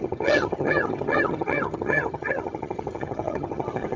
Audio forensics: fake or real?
fake